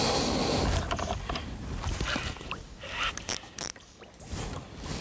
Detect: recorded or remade recorded